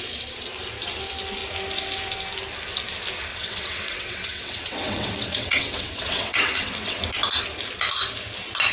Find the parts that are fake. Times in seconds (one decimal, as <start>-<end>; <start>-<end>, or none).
3.3-7.0